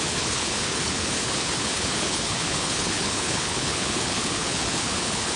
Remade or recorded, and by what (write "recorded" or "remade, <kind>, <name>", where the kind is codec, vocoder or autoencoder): remade, codec, HILCodec